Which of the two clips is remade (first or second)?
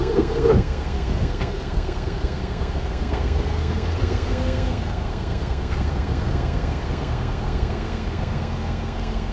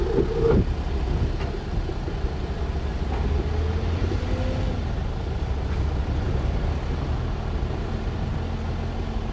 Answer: first